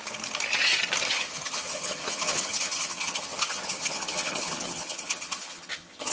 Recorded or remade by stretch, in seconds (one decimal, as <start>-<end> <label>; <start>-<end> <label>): 0.0-1.1 recorded; 1.1-6.1 remade

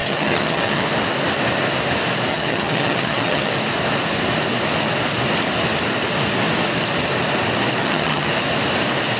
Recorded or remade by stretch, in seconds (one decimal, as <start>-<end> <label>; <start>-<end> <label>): 0.0-0.8 remade; 0.8-2.3 recorded; 2.3-3.5 remade; 3.5-7.8 recorded; 7.8-8.3 remade; 8.3-9.2 recorded

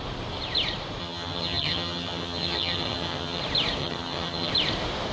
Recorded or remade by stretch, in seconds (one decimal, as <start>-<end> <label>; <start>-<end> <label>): 0.0-1.0 recorded; 1.0-3.4 remade; 3.4-3.8 recorded; 3.8-4.5 remade; 4.5-5.1 recorded

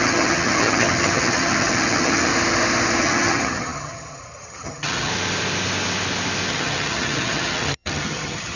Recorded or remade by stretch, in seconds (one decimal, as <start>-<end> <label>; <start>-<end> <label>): 0.0-2.3 remade; 2.3-3.0 recorded; 3.0-5.1 remade; 5.1-6.5 recorded; 6.5-8.6 remade

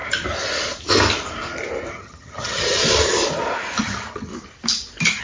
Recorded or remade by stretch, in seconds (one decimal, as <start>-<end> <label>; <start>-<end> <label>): 0.0-1.9 recorded; 1.9-2.8 remade; 2.8-3.8 recorded; 3.8-4.3 remade; 4.3-5.2 recorded